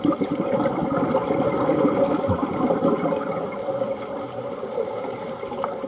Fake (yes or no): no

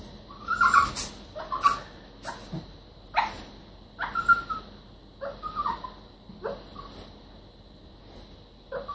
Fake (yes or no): no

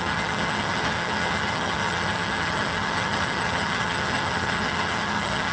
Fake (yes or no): yes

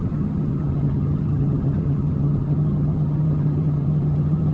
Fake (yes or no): yes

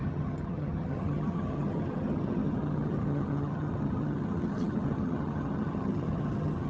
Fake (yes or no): yes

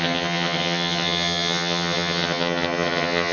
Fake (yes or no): yes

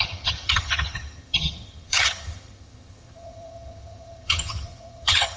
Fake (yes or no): yes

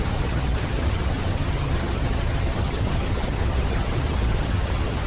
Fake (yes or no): yes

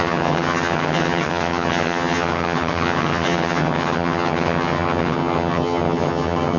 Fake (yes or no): yes